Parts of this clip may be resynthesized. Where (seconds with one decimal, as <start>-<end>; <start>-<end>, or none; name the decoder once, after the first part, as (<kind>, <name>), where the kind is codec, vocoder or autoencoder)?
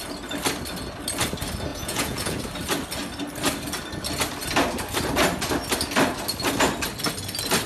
1.7-2.4 (vocoder, Vocos)